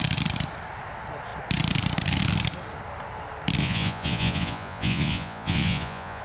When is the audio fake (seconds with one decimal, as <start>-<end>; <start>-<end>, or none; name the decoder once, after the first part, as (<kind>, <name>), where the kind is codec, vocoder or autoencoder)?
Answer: 3.6-6.2 (vocoder, Vocos)